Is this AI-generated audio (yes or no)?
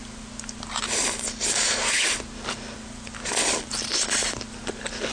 no